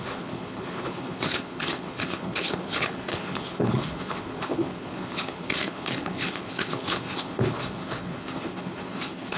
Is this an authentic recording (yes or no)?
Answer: no